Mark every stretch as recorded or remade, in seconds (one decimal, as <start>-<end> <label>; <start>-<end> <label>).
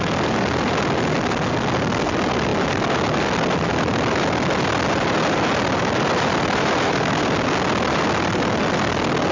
0.0-9.3 recorded